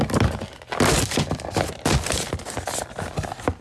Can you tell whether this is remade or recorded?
recorded